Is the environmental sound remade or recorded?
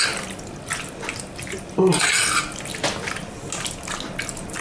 recorded